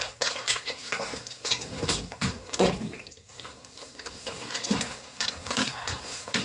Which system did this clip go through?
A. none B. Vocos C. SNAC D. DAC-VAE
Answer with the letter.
C